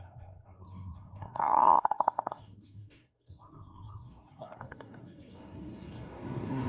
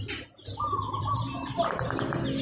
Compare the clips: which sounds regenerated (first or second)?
first